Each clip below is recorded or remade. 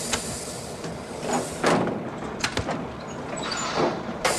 recorded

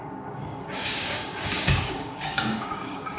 remade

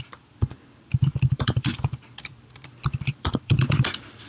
remade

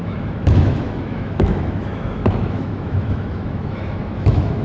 remade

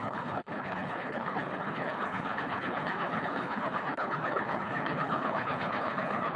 remade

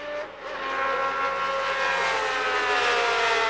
recorded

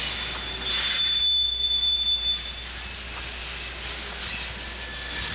recorded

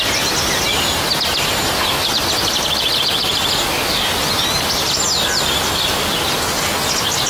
recorded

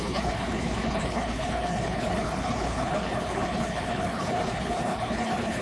remade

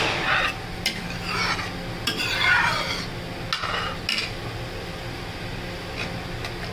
recorded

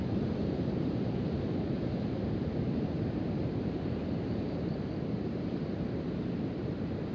remade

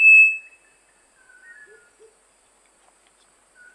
recorded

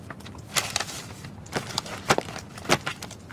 recorded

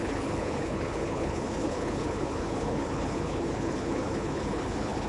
remade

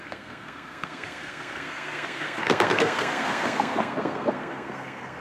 remade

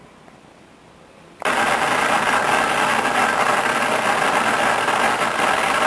recorded